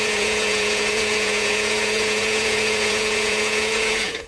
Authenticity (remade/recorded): remade